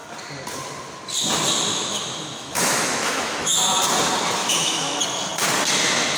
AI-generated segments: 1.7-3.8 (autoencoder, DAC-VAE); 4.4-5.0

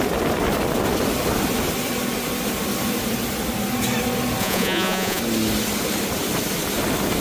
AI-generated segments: 4.4-5.2 (vocoder, Vocos)

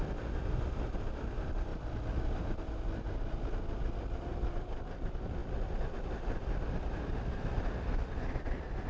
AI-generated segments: 0.0-1.7 (vocoder, BigVGAN v2); 2.3-8.9